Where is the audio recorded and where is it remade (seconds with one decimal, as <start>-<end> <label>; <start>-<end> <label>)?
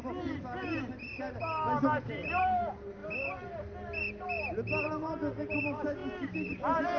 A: 0.0-7.0 recorded